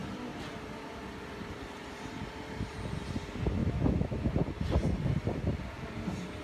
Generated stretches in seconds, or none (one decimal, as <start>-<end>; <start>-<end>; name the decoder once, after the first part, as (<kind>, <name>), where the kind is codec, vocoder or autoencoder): 3.6-4.3 (autoencoder, DAC-VAE)